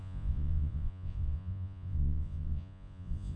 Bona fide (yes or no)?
no